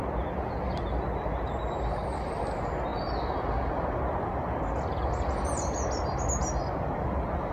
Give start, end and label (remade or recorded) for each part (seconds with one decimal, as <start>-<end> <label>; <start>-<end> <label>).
0.0-7.5 recorded